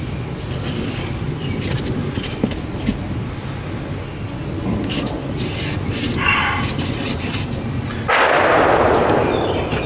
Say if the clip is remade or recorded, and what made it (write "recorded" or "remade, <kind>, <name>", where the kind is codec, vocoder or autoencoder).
recorded